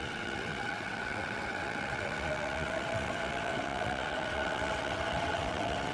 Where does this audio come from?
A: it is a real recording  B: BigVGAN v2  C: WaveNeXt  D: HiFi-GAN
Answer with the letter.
C